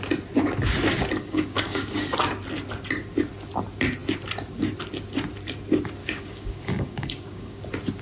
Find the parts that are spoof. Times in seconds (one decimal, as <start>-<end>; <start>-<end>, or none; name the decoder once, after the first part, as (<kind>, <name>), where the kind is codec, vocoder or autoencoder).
1.2-2.0 (codec, DAC); 6.0-7.6